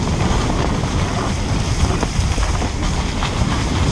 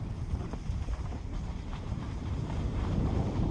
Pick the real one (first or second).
first